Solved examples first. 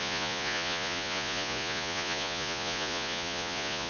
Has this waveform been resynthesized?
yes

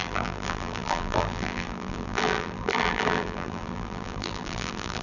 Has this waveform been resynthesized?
yes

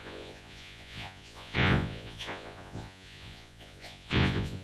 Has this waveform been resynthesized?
yes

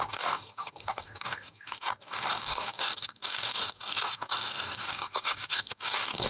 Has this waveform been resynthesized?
yes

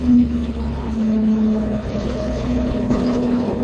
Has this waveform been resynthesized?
yes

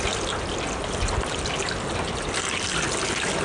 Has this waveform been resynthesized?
no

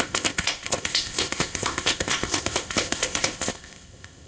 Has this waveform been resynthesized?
yes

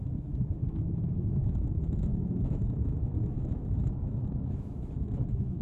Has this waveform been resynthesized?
yes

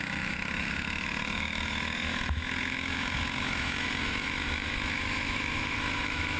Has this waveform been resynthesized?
yes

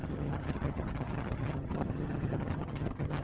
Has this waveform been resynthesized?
yes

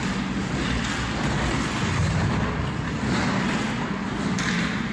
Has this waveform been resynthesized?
no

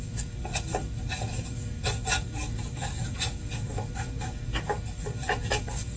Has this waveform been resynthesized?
yes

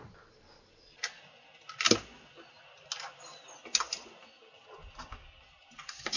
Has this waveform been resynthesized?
no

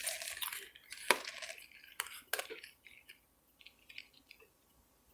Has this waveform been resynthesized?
no